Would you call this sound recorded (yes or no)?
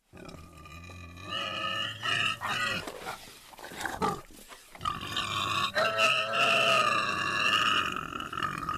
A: yes